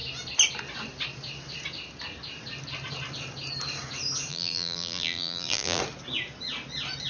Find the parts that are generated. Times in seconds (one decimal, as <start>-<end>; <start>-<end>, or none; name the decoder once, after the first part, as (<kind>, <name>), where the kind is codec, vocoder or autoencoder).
4.3-5.8 (vocoder, BigVGAN v2)